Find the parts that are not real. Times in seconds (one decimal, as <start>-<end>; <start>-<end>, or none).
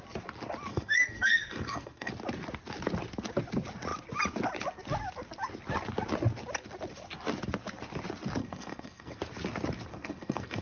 0.7-2.1; 8.4-9.2; 9.9-10.6